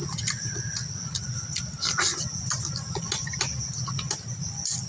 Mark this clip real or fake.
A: real